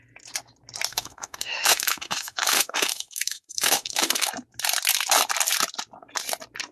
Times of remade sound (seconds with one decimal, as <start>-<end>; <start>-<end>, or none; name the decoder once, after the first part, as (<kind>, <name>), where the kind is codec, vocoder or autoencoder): 0.9-4.3 (autoencoder, DAC-VAE)